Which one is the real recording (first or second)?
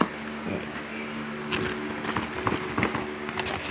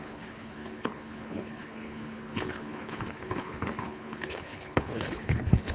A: first